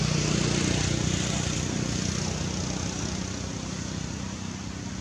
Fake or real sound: real